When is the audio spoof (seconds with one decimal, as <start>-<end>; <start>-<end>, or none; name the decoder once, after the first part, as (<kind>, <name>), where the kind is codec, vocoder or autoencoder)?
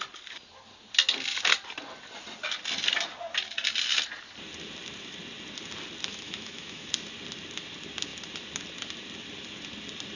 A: 6.1-6.9 (autoencoder, DAC-VAE)